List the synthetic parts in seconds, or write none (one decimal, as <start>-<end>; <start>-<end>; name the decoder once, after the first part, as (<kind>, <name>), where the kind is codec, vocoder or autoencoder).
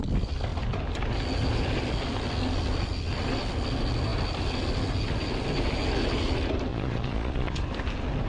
6.7-7.6 (vocoder, Vocos)